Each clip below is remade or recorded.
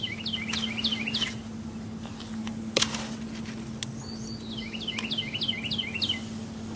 recorded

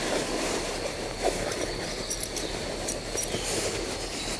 recorded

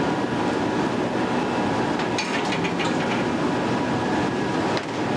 recorded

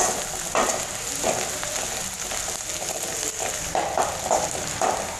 recorded